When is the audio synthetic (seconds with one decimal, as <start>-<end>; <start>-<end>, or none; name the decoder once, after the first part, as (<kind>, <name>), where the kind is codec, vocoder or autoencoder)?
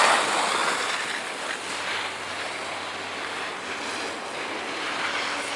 0.6-2.3 (vocoder, BigVGAN v2)